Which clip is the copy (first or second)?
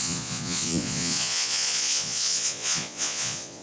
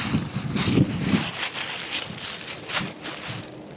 first